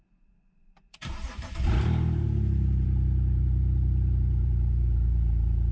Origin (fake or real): fake